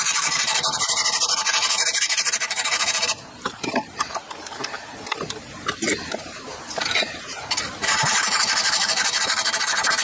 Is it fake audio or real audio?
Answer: fake